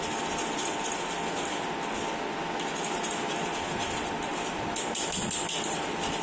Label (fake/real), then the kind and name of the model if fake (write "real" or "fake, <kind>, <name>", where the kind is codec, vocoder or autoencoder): real